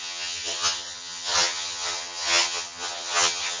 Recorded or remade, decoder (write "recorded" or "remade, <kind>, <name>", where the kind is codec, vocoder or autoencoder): remade, vocoder, HiFi-GAN